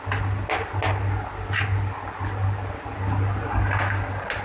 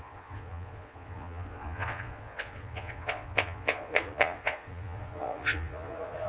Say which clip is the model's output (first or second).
second